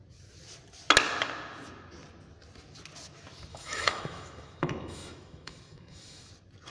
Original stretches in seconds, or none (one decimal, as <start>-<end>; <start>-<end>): 0.0-3.5; 6.3-6.7